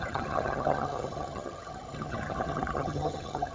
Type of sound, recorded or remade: remade